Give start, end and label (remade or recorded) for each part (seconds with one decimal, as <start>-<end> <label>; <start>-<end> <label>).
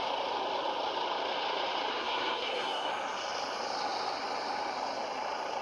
0.0-1.9 recorded; 1.9-2.9 remade; 2.9-5.6 recorded